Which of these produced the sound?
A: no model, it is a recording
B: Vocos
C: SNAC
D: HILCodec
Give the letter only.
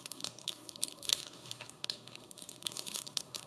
C